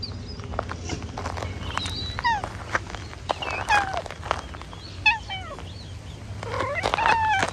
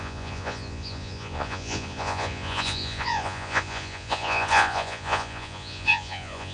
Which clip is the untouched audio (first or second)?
first